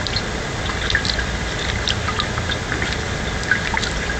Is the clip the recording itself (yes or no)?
yes